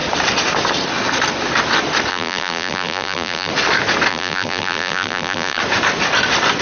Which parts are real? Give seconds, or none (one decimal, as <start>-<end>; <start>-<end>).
0.0-2.1; 3.5-4.1; 5.6-6.6